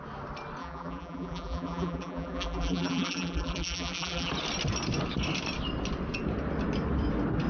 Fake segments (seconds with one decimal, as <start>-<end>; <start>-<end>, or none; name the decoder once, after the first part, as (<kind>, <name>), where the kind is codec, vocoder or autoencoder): 0.6-4.3 (vocoder, BigVGAN v2)

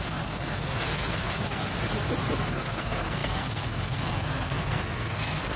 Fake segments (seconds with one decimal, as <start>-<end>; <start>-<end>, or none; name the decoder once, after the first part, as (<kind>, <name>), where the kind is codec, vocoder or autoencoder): 0.0-1.7 (codec, SNAC); 2.5-5.6

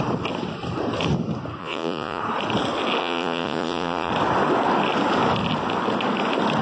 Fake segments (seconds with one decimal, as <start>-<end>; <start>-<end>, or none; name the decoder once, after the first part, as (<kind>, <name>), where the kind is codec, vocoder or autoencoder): 1.6-2.2 (vocoder, Vocos); 3.0-4.1

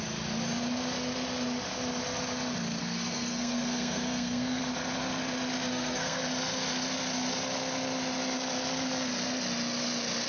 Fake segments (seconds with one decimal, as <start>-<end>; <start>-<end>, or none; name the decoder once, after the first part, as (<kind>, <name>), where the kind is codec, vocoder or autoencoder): 2.8-4.6 (codec, SNAC); 5.7-6.2

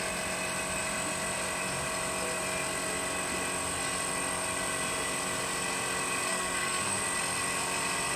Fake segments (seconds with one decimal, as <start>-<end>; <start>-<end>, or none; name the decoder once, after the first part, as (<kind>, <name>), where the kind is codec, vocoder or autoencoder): 6.3-7.0 (codec, SNAC)

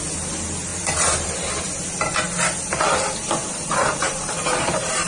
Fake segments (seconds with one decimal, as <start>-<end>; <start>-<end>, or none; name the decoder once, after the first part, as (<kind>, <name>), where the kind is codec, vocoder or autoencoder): 0.7-1.3 (vocoder, BigVGAN v2); 3.4-5.1